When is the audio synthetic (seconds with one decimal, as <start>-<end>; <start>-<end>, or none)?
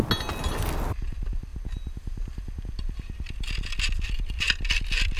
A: none